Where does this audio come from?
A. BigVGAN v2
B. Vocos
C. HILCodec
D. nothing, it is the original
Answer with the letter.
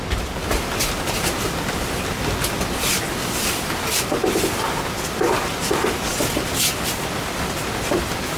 D